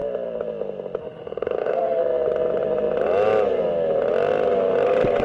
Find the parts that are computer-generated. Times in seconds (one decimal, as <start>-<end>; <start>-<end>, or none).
1.0-2.0

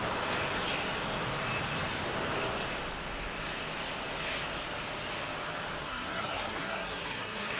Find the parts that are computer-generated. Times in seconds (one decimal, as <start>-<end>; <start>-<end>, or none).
5.8-7.6

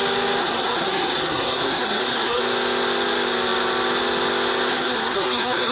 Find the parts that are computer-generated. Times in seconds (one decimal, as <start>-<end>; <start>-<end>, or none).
0.4-2.4; 4.7-5.7

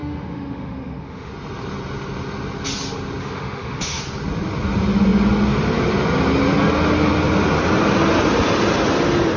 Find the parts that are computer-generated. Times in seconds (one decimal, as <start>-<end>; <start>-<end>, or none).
0.0-1.3; 3.2-4.0